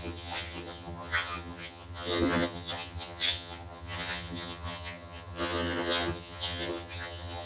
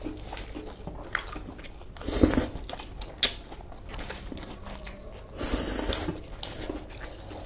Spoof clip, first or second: first